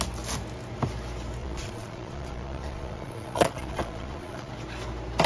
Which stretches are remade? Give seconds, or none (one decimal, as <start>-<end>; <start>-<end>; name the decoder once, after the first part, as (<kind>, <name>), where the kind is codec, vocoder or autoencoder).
1.4-4.5 (vocoder, Vocos)